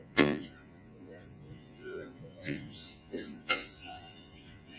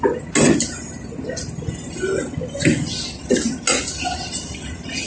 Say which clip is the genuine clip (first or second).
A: second